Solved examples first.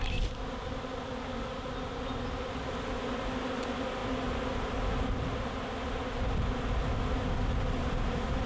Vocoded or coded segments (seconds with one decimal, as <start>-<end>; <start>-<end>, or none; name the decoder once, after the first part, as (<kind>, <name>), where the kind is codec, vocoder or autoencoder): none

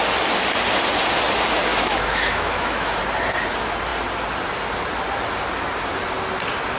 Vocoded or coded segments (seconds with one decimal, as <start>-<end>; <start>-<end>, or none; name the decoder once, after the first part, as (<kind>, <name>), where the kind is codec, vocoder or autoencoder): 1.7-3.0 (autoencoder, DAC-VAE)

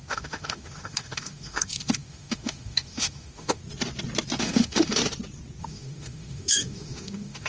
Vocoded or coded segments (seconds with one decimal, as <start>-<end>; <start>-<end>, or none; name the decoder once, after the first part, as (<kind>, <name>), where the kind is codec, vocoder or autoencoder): 0.0-3.6 (autoencoder, DAC-VAE); 4.4-5.0; 5.6-7.5

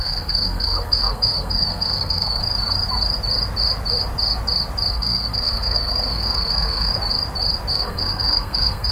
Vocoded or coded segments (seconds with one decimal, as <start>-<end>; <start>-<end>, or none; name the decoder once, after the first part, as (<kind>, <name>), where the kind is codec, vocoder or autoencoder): 0.0-2.4 (codec, SNAC); 4.9-6.9; 7.7-8.9